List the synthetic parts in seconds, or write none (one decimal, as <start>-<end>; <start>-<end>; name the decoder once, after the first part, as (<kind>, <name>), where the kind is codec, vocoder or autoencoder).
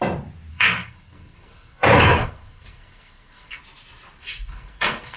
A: 0.5-3.6 (codec, SNAC); 4.2-5.2